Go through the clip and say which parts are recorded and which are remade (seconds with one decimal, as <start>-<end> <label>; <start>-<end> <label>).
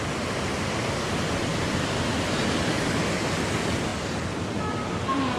0.0-5.4 recorded